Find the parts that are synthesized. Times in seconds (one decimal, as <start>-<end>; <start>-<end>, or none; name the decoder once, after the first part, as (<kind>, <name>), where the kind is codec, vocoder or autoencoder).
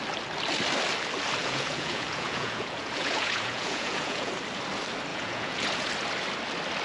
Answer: 1.4-4.3 (vocoder, Vocos); 5.1-5.9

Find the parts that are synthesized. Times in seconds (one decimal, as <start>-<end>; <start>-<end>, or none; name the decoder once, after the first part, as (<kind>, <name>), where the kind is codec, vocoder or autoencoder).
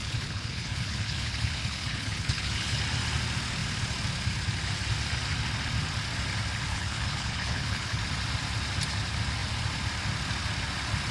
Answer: 0.0-2.8 (codec, HILCodec); 6.7-8.0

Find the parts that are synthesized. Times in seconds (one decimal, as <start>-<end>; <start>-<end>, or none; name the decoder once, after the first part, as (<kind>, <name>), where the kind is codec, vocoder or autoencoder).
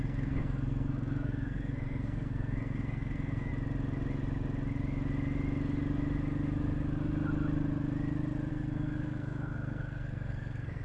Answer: 0.0-3.5 (codec, SNAC); 8.5-10.8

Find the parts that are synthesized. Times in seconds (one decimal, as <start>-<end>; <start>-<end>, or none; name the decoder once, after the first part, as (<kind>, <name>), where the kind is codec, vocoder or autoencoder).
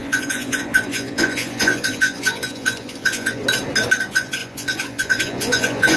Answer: 0.0-3.4 (vocoder, Vocos); 4.0-6.0